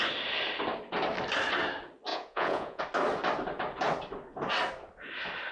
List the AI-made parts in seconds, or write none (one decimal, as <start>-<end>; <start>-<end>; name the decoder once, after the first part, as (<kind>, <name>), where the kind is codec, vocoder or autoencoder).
2.1-2.8 (vocoder, Vocos)